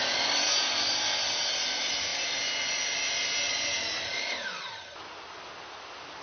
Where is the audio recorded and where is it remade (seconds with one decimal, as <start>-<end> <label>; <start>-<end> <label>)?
0.0-6.2 recorded